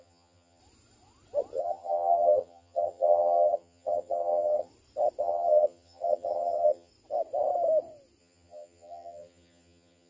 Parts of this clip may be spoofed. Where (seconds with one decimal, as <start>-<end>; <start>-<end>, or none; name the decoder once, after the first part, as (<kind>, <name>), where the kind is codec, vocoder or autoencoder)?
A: 0.0-0.6 (vocoder, HiFi-GAN); 1.6-4.7; 5.2-6.9; 8.2-10.1